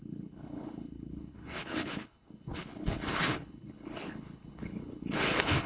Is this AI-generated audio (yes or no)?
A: yes